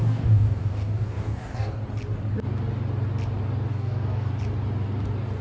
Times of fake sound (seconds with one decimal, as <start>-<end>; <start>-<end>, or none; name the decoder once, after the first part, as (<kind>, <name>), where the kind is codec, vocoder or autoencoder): 0.0-1.8 (codec, DAC); 3.7-4.3